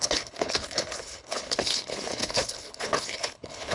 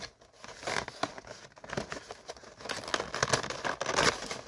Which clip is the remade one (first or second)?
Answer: first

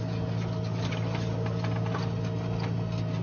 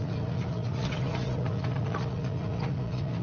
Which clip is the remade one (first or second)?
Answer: second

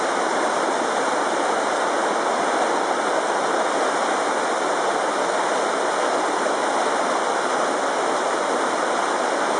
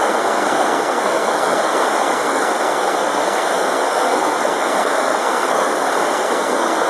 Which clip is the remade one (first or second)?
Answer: second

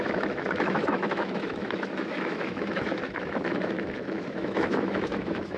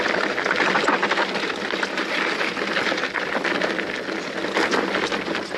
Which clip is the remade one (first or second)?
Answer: first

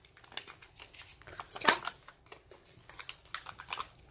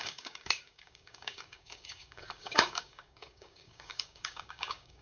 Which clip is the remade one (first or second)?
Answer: second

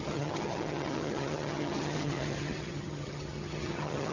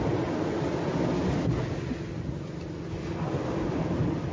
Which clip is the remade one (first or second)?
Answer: first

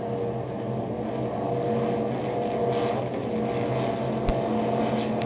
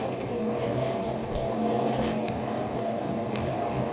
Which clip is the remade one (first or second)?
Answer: second